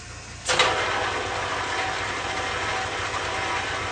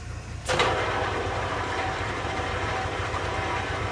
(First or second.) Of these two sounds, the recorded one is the first